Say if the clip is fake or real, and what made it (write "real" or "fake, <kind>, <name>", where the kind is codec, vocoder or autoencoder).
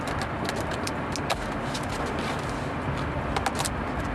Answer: real